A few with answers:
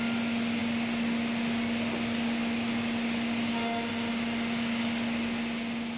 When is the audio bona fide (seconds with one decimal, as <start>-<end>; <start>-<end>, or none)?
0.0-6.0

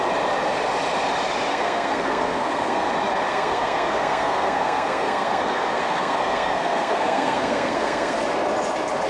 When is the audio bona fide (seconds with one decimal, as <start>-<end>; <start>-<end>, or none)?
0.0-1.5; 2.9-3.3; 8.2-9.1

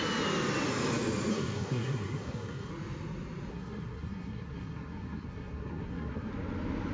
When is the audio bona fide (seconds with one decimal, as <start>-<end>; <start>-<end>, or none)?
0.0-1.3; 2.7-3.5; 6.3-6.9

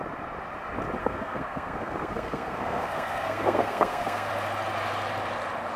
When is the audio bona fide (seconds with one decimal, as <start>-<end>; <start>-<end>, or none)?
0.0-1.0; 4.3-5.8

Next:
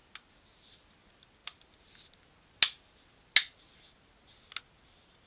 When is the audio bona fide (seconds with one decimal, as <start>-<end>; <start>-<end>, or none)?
0.0-5.3

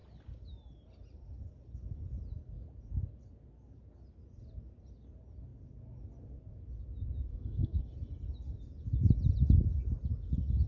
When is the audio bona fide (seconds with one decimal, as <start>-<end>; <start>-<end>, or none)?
0.0-7.3; 7.8-10.7